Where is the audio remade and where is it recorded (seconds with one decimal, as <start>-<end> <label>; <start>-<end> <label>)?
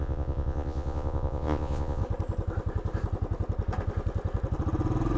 0.0-2.0 remade; 2.0-5.2 recorded